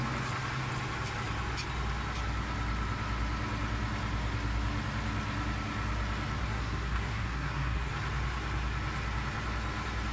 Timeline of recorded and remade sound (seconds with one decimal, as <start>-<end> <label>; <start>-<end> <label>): 0.0-6.4 recorded; 6.4-7.9 remade; 7.9-10.1 recorded